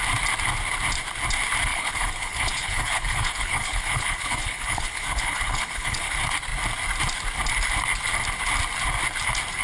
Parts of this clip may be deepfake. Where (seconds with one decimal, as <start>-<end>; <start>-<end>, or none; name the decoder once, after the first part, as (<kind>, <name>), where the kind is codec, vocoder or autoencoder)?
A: 1.7-6.1 (codec, HILCodec)